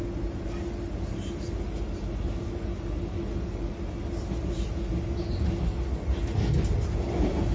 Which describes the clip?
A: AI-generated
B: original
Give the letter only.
B